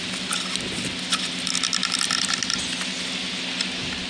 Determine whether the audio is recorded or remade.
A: recorded